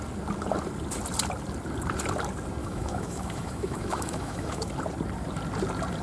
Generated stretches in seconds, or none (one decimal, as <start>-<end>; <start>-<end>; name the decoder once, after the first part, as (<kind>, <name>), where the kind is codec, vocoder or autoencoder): 2.6-4.7 (autoencoder, DAC-VAE)